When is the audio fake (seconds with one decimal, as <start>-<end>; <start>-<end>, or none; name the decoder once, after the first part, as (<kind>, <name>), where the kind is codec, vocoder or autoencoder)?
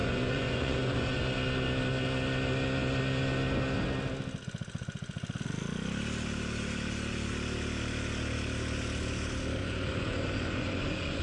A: 0.0-1.2 (vocoder, Vocos); 9.6-11.2